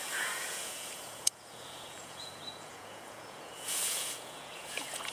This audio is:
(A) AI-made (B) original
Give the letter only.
A